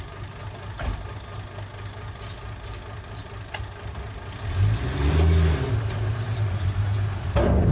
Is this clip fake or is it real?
real